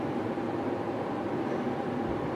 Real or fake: real